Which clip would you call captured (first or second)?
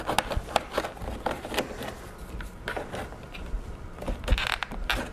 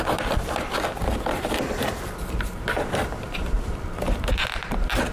first